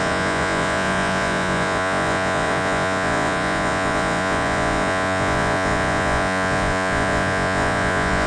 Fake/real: fake